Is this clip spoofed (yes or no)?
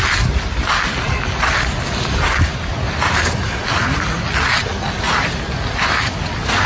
no